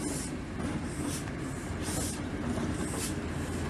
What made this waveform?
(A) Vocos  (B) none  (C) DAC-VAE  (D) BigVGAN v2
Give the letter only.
D